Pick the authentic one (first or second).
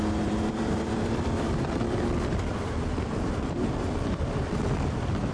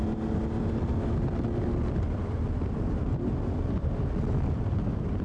second